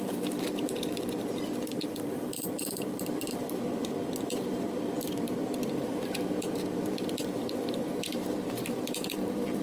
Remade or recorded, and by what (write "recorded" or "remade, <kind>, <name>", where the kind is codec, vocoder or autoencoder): remade, vocoder, BigVGAN v2